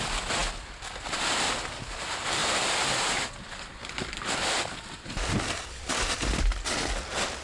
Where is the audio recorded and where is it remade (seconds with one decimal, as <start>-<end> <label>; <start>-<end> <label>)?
0.0-7.4 recorded